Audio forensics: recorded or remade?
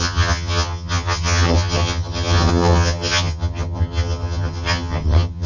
remade